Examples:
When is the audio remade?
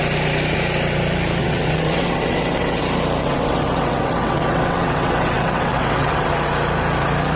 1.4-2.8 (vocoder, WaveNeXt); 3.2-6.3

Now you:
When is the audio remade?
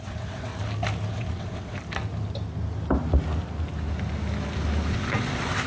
0.0-0.5 (vocoder, WaveNeXt); 1.1-1.8; 4.9-5.7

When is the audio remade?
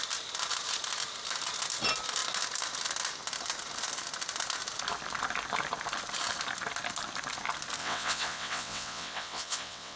7.8-10.0 (vocoder, WaveNeXt)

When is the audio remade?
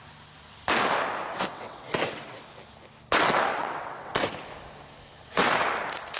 1.2-2.4 (vocoder, WaveNeXt); 3.5-4.1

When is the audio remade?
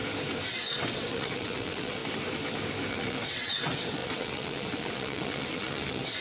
0.5-2.0 (vocoder, WaveNeXt); 2.9-6.2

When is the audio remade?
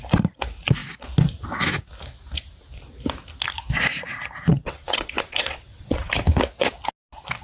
4.5-6.1 (vocoder, WaveNeXt)